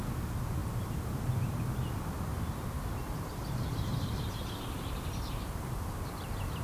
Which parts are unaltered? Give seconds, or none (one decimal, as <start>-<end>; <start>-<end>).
0.0-0.6; 1.9-2.3